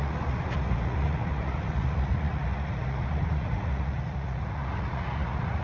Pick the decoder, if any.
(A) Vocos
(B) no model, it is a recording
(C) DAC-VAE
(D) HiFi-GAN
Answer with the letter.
A